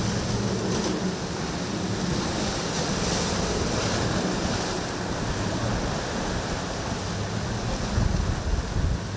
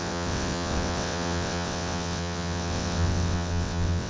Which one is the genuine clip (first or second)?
first